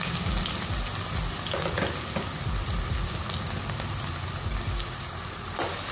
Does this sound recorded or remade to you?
recorded